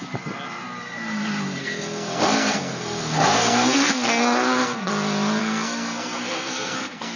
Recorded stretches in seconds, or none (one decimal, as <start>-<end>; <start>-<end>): 0.0-1.6; 4.9-5.4